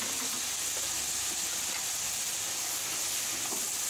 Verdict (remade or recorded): recorded